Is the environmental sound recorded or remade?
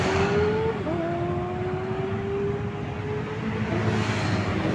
recorded